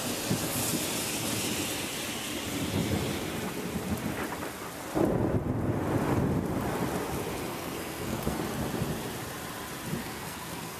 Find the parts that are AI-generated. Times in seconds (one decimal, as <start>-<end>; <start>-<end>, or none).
7.5-8.4; 10.0-10.8